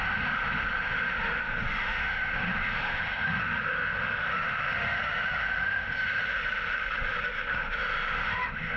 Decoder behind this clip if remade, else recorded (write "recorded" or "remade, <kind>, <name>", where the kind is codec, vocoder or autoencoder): remade, autoencoder, DAC-VAE